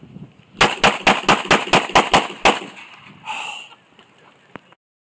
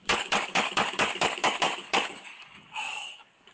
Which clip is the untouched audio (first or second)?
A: first